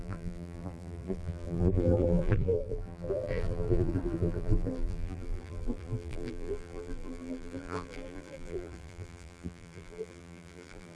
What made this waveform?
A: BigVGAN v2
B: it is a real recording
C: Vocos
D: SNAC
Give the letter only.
A